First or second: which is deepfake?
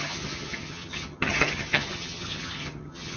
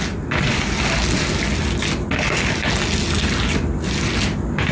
first